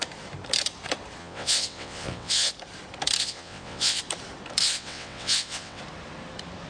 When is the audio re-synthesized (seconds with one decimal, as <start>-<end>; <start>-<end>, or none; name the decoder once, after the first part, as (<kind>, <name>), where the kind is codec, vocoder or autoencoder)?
1.2-2.5 (vocoder, WaveNeXt); 3.2-4.0; 4.6-5.8